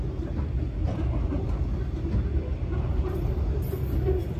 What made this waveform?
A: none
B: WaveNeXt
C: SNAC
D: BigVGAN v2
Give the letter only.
A